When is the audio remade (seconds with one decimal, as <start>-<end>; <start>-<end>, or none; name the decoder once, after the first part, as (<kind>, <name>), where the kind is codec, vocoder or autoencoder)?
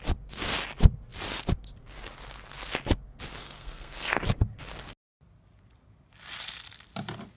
3.4-4.2 (codec, SNAC)